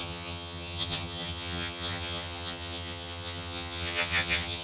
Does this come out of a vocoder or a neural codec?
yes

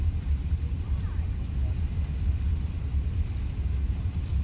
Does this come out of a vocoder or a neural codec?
no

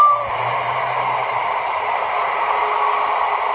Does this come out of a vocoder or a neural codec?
no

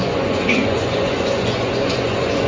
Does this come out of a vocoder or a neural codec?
yes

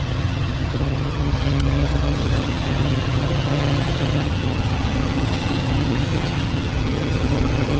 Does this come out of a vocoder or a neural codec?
yes